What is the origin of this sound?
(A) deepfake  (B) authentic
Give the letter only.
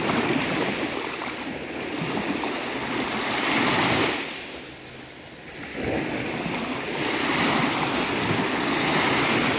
B